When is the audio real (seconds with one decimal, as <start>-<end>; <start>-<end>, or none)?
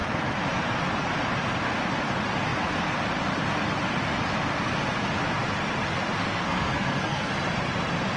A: 0.0-6.2; 7.3-8.2